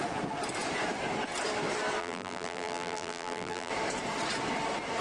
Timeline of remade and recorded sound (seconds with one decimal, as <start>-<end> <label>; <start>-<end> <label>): 0.0-2.0 recorded; 2.0-3.7 remade; 3.7-5.0 recorded